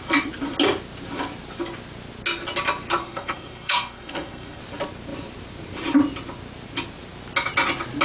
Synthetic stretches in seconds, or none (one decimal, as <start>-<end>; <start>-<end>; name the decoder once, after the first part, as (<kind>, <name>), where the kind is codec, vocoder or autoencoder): 3.0-4.6 (codec, SNAC)